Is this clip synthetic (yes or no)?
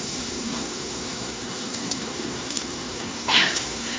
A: yes